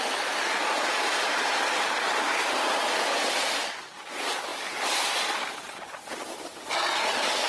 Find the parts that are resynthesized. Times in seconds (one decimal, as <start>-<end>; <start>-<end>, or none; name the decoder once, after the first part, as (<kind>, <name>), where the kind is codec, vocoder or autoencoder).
none